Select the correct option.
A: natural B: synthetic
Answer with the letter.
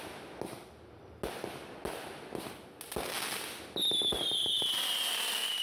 A